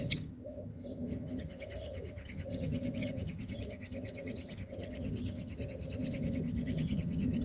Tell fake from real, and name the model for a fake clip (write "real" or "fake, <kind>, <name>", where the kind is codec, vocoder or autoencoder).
fake, vocoder, HiFi-GAN